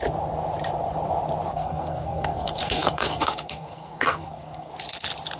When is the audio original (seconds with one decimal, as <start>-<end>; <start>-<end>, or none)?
0.0-1.5; 4.7-5.4